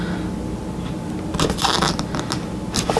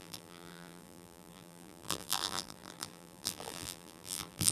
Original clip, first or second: first